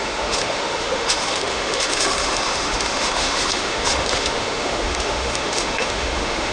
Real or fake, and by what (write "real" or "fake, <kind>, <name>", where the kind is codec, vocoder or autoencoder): fake, autoencoder, DAC-VAE